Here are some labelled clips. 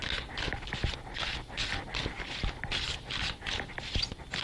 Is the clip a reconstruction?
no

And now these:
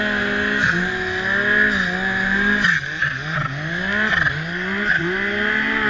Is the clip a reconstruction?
no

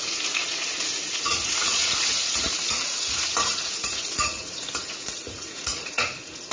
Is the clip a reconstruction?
yes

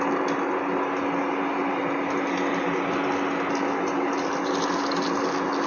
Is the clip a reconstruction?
no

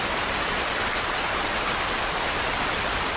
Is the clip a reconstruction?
yes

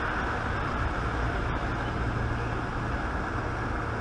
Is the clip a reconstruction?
no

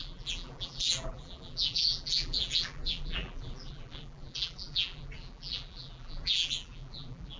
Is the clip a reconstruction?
yes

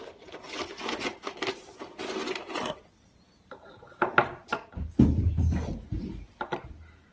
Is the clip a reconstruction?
no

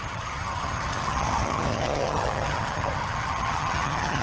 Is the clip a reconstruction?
yes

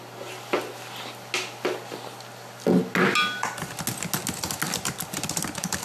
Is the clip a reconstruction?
no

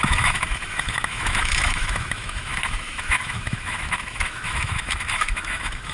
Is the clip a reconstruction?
yes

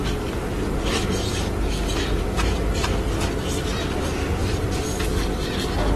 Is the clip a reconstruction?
no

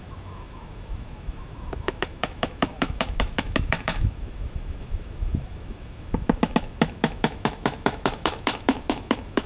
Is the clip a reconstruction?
yes